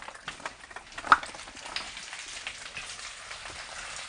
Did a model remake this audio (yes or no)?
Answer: no